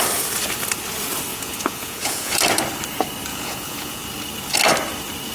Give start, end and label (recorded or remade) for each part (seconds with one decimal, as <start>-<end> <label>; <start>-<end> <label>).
0.0-1.3 recorded; 1.3-2.3 remade; 2.3-3.3 recorded; 3.3-4.0 remade; 4.0-5.3 recorded